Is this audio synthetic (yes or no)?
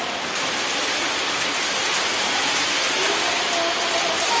no